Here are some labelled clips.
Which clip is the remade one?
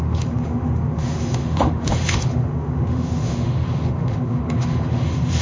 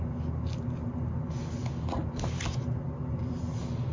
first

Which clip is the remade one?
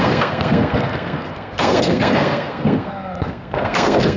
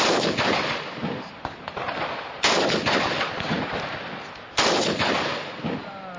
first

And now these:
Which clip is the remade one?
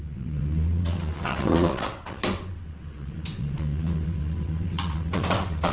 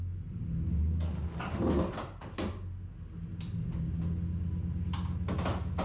first